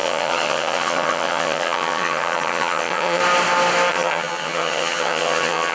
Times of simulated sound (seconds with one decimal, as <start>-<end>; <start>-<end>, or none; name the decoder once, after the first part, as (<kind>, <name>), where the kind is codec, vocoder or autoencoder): 0.0-3.2 (vocoder, HiFi-GAN); 3.9-5.7